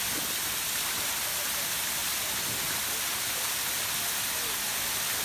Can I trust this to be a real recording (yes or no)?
yes